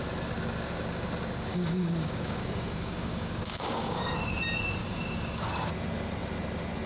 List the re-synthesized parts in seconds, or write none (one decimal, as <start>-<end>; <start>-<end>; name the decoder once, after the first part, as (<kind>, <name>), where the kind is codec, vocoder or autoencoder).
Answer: 1.5-4.3 (codec, DAC); 4.8-5.7